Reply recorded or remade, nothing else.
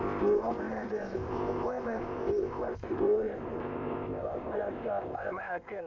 remade